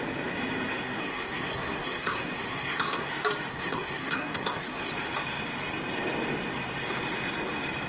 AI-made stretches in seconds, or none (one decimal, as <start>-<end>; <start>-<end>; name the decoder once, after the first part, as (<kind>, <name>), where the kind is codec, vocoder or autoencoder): 1.0-3.1 (codec, SNAC); 3.5-4.9